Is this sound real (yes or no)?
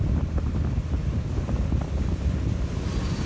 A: yes